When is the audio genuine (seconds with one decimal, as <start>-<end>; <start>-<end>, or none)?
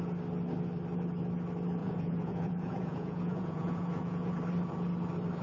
0.0-1.8; 4.3-5.4